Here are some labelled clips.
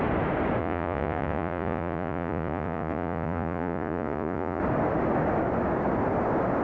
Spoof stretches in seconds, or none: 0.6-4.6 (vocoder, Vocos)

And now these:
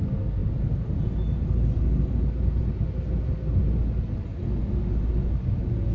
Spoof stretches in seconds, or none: none